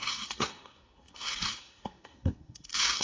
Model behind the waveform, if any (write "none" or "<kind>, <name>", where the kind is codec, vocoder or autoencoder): codec, SNAC